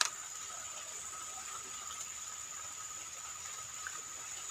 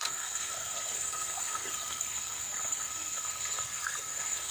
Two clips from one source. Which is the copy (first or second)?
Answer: second